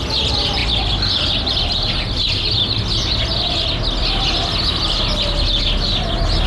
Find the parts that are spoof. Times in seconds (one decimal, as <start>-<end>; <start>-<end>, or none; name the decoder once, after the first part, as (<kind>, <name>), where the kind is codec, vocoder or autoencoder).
none